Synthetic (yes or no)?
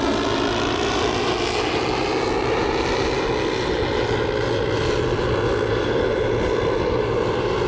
no